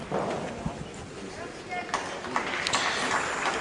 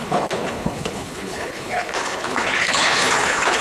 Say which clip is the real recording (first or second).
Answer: first